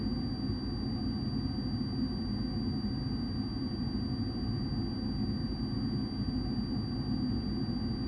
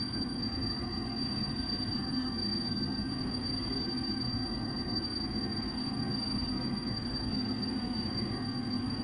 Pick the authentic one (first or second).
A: first